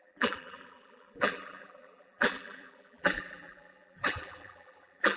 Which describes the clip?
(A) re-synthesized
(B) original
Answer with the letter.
A